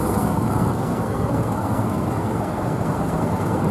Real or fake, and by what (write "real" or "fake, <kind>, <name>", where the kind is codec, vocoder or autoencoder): fake, codec, SNAC